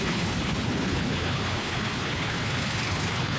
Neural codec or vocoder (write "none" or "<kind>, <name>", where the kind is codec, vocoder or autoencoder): codec, HILCodec